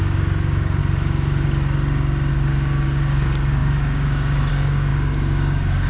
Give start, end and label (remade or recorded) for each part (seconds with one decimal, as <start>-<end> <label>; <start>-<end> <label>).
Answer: 0.0-0.8 remade; 0.8-2.3 recorded; 2.3-5.9 remade